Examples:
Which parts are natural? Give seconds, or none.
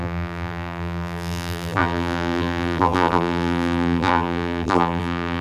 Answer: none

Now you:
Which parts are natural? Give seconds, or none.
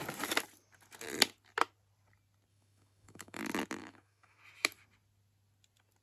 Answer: 0.0-2.5; 3.4-3.8; 4.4-6.0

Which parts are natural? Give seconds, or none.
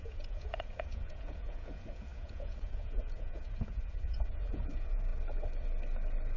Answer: 5.1-6.4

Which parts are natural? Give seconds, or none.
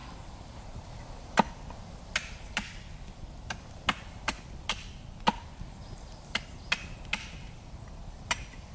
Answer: 0.0-8.7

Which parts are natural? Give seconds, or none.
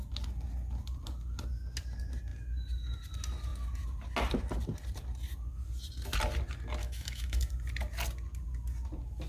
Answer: 0.0-6.8; 7.5-9.3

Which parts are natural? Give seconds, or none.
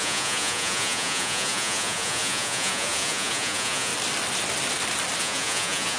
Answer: 3.9-5.2